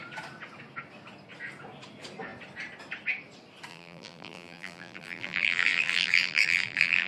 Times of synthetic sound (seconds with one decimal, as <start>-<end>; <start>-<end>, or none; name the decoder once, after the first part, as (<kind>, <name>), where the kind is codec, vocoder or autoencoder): 3.7-7.1 (vocoder, BigVGAN v2)